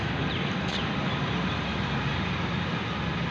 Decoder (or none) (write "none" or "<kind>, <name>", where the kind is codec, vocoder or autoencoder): none